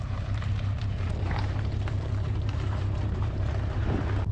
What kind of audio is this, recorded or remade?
remade